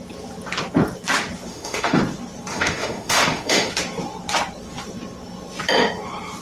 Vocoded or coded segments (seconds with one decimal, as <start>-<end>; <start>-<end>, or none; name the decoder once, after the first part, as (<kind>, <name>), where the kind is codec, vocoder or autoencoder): 1.5-2.0 (autoencoder, DAC-VAE); 2.5-3.7